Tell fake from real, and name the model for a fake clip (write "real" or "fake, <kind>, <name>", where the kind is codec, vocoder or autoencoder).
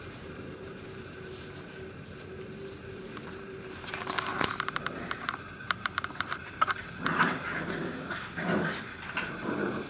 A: fake, vocoder, BigVGAN v2